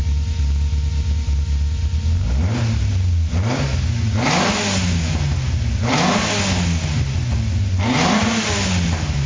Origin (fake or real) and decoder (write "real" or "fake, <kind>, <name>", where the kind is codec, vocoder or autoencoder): real